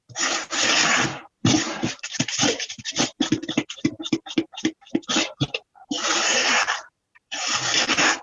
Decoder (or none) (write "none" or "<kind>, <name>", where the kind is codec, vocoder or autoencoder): vocoder, BigVGAN v2